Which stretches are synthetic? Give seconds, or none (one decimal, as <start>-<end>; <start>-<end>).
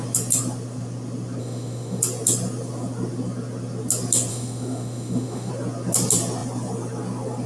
1.4-2.0; 4.3-5.5